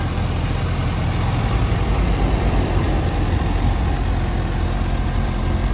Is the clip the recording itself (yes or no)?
yes